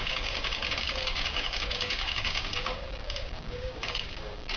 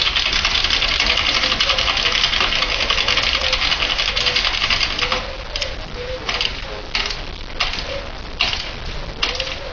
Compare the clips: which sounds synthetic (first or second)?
first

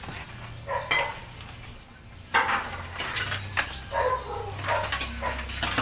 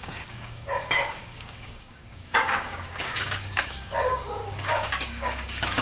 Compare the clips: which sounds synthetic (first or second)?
second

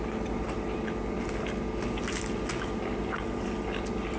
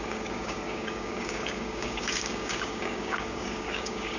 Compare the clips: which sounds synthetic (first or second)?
second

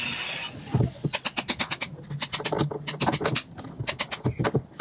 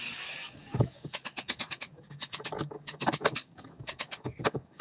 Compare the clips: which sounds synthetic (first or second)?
second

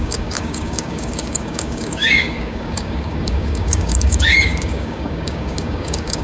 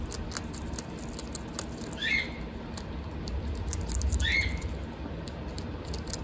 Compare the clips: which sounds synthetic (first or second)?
first